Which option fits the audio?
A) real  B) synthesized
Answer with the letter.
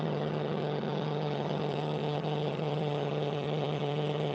B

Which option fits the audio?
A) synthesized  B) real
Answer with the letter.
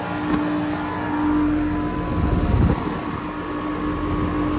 B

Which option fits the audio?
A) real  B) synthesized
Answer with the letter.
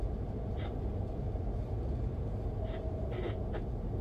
B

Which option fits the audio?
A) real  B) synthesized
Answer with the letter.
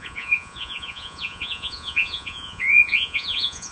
B